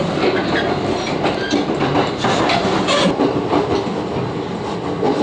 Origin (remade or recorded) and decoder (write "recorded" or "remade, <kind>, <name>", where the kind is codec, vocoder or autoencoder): recorded